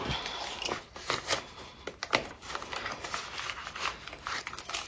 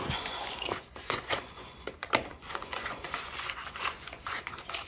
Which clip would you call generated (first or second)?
second